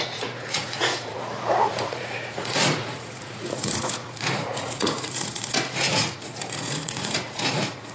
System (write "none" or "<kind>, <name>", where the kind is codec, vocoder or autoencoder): vocoder, Vocos